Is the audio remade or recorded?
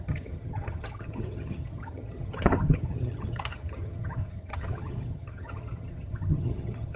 remade